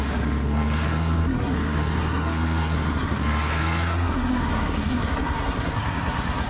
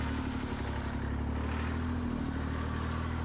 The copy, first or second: first